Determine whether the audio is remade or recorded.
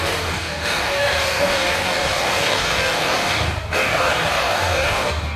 remade